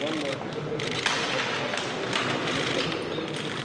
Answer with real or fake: real